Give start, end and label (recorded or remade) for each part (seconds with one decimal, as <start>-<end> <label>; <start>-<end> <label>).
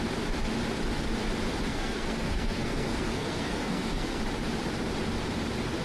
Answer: 0.0-1.7 recorded; 1.7-4.2 remade; 4.2-5.8 recorded